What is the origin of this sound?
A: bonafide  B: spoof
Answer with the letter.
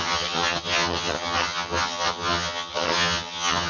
B